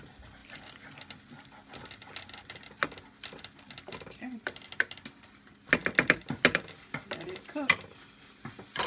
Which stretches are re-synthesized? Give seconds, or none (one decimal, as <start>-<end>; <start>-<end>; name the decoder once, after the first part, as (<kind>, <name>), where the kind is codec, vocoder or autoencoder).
none